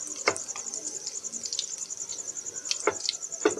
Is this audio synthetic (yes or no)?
no